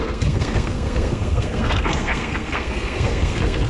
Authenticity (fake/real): fake